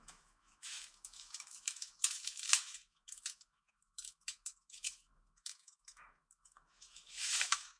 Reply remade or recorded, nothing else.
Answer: remade